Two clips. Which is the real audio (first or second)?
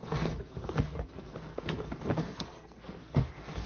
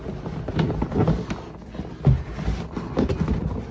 second